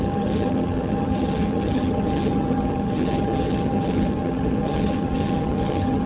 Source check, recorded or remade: remade